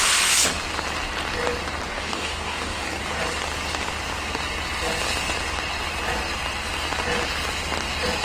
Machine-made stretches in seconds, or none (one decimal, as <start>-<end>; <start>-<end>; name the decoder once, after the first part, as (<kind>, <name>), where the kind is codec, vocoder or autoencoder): 1.9-3.0 (codec, DAC)